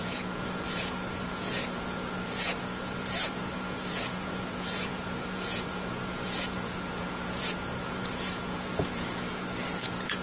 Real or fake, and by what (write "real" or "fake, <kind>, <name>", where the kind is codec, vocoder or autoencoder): fake, vocoder, Vocos